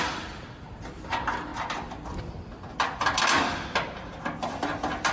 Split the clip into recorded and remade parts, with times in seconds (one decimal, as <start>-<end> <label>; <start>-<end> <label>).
0.0-1.5 remade; 1.5-4.6 recorded; 4.6-5.1 remade